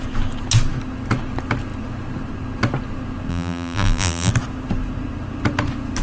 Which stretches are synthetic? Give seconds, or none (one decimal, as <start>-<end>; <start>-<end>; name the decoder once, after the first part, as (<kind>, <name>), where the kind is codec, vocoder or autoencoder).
3.3-4.3 (vocoder, BigVGAN v2)

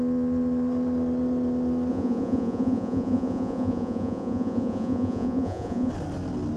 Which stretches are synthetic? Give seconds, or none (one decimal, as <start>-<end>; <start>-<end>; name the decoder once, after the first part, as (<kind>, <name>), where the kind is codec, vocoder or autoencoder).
1.9-5.9 (vocoder, Vocos)

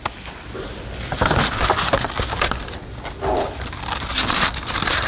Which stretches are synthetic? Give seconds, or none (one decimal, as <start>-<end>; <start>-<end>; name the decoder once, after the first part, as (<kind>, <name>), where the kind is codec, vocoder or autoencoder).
none

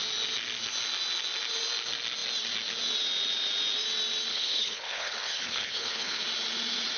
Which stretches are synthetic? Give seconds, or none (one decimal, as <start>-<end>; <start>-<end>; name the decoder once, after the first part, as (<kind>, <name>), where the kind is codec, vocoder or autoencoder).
4.3-6.2 (codec, HILCodec)

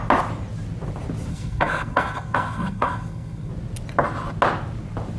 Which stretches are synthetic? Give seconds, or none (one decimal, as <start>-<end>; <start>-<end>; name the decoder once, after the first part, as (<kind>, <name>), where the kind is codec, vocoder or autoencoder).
1.3-3.5 (codec, SNAC)

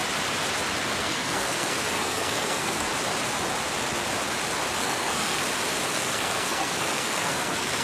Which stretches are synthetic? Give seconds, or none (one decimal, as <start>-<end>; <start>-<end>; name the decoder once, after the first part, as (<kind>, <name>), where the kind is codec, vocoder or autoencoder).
1.0-2.9 (codec, SNAC); 4.8-5.4; 5.9-7.8

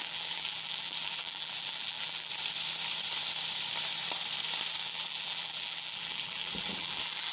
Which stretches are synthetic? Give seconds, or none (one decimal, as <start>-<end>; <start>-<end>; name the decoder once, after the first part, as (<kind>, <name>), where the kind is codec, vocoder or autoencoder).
0.0-2.3 (vocoder, BigVGAN v2); 4.8-7.3

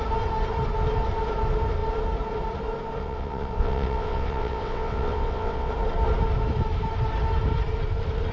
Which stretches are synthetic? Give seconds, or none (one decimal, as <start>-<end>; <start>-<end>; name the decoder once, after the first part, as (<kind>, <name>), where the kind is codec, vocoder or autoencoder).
3.0-5.7 (vocoder, WaveNeXt)